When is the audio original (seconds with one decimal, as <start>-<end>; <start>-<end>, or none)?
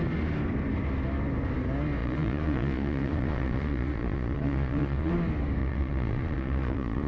0.0-2.0; 5.1-5.6